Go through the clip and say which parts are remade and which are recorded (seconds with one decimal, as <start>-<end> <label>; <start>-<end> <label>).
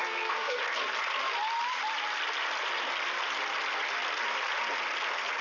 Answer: 0.0-0.6 remade; 0.6-5.4 recorded